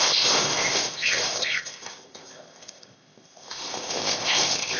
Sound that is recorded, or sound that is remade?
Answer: remade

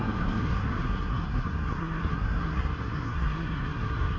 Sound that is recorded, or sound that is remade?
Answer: remade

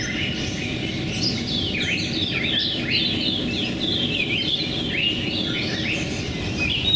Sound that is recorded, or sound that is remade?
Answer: recorded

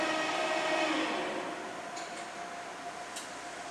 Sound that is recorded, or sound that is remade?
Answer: recorded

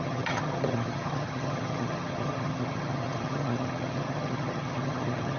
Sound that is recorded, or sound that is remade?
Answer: remade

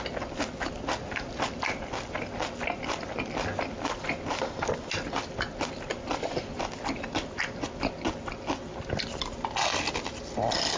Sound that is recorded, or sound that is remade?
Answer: recorded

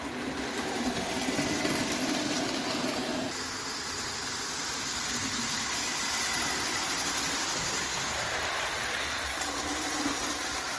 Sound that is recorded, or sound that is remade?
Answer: recorded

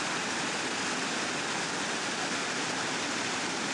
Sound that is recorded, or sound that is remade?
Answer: recorded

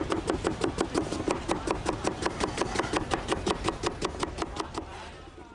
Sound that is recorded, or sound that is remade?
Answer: recorded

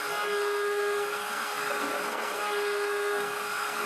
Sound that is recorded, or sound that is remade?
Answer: remade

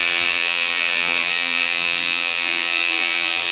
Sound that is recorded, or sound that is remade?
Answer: remade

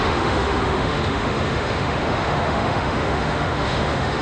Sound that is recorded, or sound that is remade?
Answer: remade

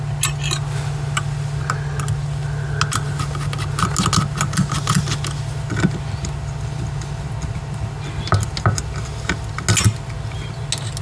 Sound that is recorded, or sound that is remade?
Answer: recorded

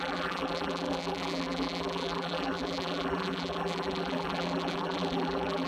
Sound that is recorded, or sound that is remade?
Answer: remade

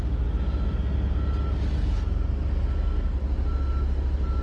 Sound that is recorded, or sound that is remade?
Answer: recorded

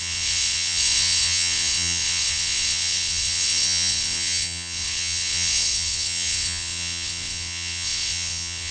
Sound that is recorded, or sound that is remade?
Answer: remade